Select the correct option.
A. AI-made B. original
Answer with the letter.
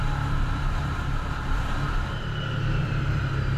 A